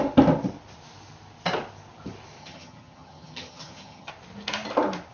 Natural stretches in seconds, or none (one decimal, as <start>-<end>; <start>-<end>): 0.0-2.4; 4.1-5.1